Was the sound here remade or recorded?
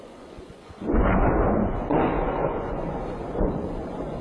remade